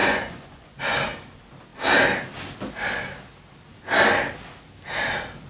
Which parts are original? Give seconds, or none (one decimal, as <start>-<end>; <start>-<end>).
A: 0.8-5.5